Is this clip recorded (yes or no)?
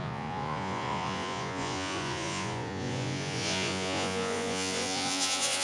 no